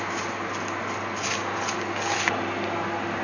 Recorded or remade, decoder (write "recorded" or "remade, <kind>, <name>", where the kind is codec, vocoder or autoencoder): recorded